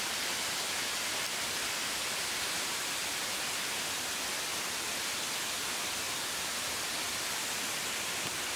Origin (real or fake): real